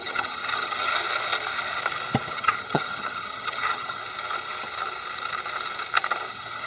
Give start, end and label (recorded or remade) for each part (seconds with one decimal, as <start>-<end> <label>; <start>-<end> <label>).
0.0-0.9 remade; 0.9-2.3 recorded; 2.3-4.0 remade; 4.0-6.3 recorded; 6.3-6.7 remade